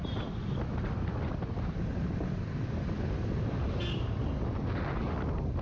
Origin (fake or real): real